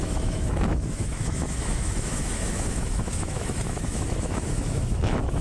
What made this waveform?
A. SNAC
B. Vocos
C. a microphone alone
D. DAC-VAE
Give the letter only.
D